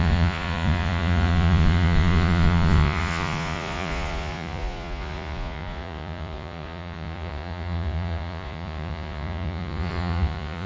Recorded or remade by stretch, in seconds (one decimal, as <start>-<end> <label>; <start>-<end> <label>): 0.0-10.7 remade